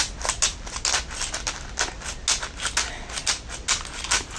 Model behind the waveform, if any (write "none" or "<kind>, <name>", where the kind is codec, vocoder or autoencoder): none